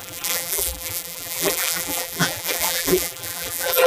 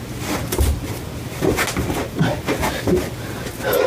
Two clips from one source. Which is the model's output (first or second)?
first